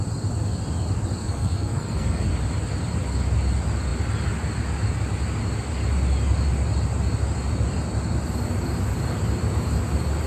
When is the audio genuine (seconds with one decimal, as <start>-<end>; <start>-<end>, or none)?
0.0-1.2; 2.3-10.3